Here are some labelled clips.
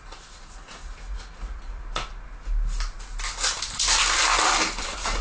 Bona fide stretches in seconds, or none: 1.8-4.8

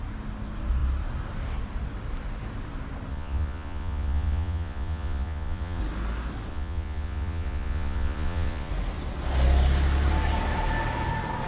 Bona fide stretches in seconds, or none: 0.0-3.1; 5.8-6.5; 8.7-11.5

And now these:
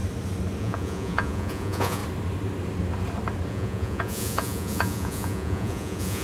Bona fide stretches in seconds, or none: 0.0-0.6; 2.0-3.5